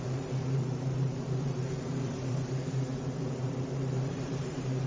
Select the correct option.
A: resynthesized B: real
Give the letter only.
A